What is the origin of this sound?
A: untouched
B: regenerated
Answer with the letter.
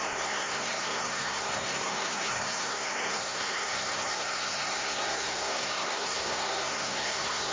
B